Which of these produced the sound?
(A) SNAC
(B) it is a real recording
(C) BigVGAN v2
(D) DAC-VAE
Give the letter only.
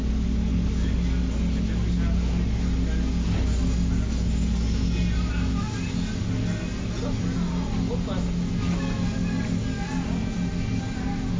B